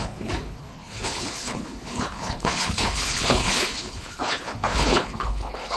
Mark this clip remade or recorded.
remade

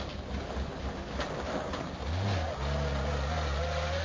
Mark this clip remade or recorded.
recorded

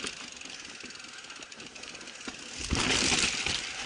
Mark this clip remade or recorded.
recorded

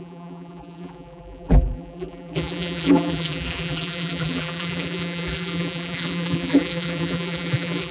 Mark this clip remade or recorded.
remade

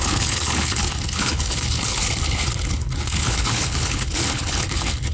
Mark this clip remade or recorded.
remade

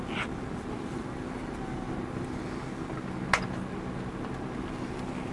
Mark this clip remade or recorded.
recorded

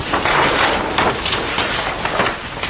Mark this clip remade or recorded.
recorded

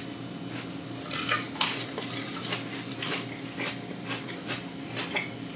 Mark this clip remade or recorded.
recorded